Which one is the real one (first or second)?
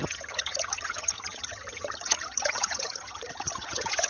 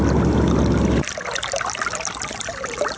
second